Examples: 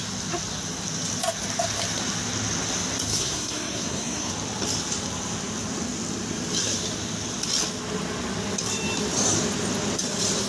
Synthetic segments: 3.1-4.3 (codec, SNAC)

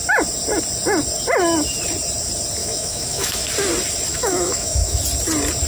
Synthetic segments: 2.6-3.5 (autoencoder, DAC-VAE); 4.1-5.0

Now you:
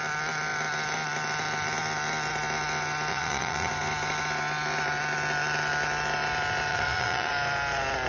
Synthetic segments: 3.1-3.7 (vocoder, Vocos); 6.7-7.3

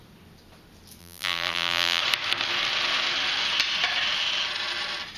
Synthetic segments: 1.0-2.0 (vocoder, BigVGAN v2)

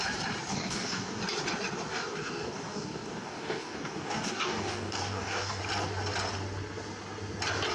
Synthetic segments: 0.5-1.2 (codec, DAC); 1.9-5.6